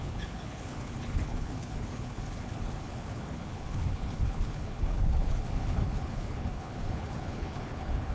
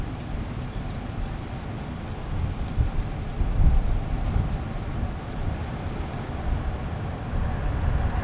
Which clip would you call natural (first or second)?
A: second